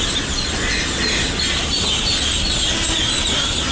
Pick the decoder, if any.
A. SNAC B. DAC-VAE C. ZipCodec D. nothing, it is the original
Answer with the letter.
D